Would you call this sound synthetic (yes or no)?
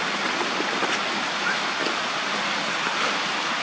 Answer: no